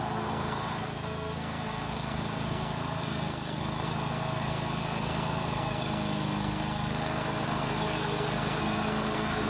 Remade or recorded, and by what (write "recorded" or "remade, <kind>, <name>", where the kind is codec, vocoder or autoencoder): remade, codec, SNAC